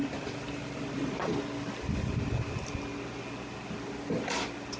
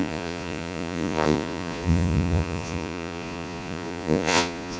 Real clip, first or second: first